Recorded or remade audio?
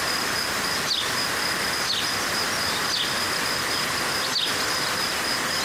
recorded